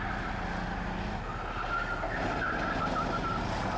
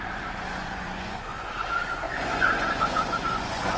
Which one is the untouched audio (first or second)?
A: first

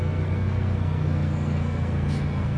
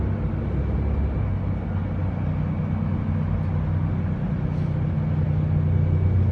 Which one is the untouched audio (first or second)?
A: second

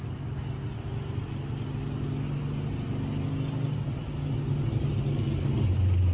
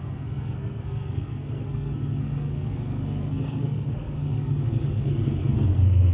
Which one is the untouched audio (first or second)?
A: first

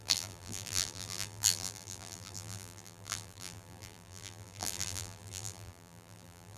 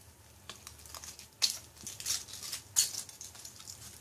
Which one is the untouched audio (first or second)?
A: second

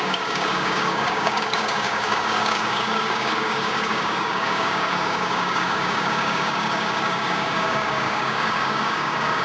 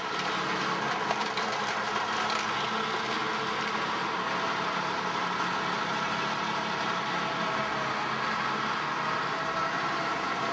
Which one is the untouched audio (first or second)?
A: second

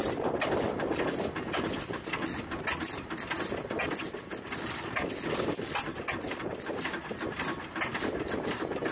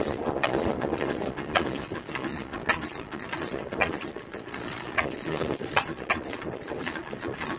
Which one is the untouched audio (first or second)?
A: first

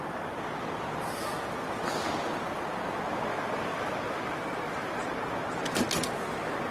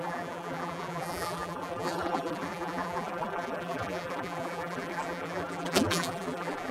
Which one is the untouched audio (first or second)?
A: first